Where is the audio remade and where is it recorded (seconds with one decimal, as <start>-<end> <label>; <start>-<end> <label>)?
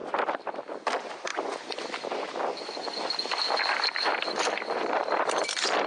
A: 0.0-5.9 recorded